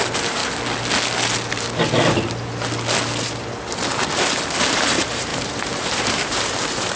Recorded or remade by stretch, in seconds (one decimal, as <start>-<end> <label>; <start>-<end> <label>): 0.0-0.4 remade; 0.4-4.6 recorded; 4.6-7.0 remade

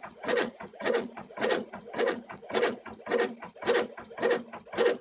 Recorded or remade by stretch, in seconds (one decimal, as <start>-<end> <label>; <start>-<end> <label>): 0.0-2.9 remade; 2.9-5.0 recorded